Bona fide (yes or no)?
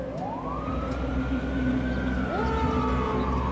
yes